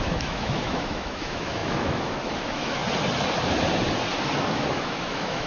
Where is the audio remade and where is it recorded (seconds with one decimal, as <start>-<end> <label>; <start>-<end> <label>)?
0.0-2.8 remade; 2.8-4.5 recorded; 4.5-5.5 remade